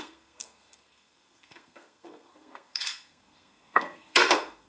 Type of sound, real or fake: fake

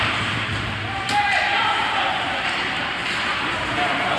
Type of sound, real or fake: fake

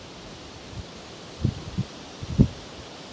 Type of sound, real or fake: fake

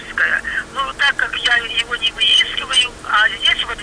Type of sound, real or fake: real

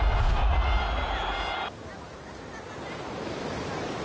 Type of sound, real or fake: real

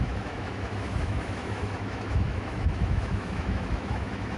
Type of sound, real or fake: fake